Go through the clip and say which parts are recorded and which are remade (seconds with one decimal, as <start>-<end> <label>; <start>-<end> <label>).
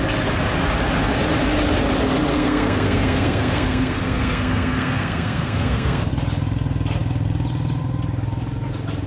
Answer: 0.0-2.3 recorded; 2.3-6.1 remade; 6.1-9.1 recorded